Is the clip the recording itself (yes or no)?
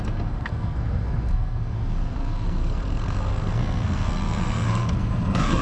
no